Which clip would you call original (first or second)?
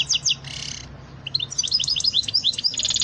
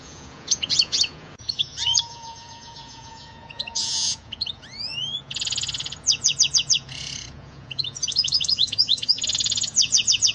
first